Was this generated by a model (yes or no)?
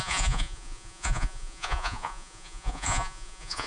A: yes